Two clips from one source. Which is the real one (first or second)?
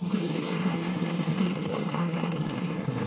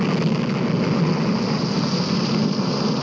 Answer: second